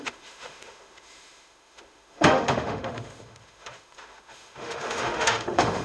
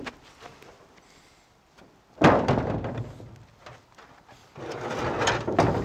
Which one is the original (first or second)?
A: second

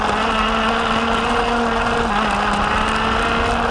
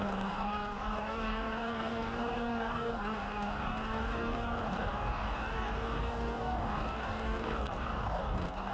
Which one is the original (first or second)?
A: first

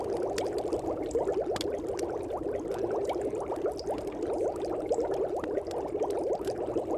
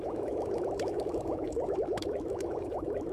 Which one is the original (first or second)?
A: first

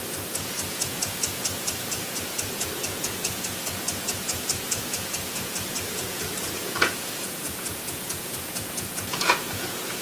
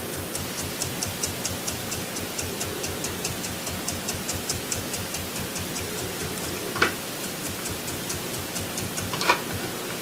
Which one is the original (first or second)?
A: second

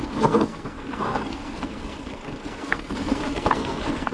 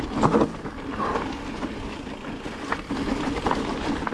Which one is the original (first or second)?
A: second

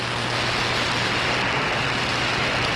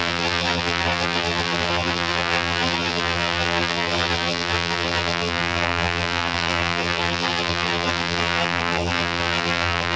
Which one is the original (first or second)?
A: first